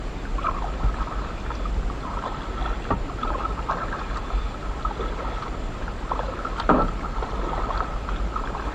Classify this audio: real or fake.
real